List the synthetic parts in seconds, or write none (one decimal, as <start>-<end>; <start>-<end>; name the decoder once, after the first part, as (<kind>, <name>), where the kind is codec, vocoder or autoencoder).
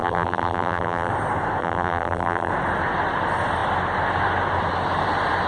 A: 0.0-1.1 (vocoder, BigVGAN v2); 1.6-2.5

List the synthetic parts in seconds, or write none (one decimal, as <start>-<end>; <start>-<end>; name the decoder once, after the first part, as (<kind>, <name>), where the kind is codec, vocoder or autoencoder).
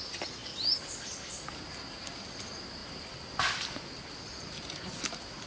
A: none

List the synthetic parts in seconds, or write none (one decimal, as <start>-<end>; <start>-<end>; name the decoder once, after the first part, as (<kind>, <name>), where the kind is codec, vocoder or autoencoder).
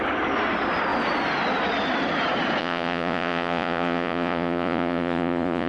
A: 2.6-5.7 (vocoder, Vocos)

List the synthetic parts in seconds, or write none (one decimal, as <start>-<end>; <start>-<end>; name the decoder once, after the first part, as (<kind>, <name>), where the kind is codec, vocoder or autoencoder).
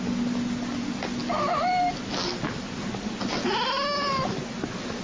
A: none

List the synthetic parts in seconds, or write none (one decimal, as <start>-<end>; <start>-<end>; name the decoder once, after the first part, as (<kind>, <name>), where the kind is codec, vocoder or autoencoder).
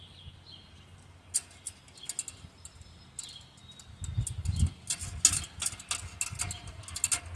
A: none